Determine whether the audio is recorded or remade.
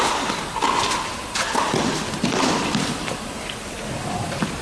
recorded